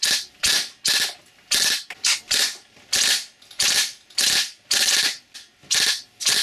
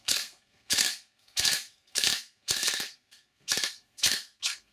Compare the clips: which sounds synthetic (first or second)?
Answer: second